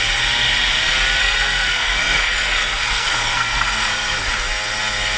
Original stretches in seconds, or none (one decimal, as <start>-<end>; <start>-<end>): 0.0-1.2; 4.3-5.2